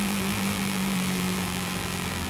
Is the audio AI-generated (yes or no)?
yes